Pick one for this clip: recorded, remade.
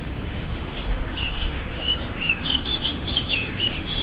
remade